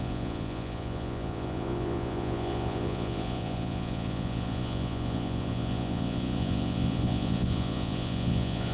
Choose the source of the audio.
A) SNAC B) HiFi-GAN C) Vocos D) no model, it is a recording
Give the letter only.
C